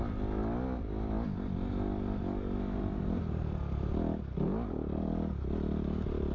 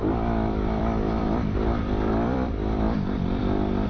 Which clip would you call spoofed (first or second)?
second